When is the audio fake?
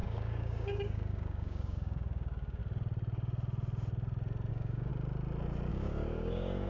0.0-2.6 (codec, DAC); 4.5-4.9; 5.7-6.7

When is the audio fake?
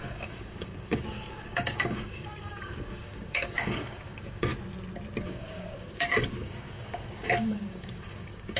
0.0-4.5 (codec, DAC); 5.2-8.6